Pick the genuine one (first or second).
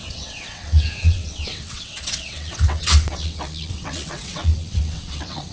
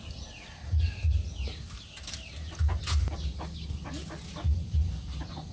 second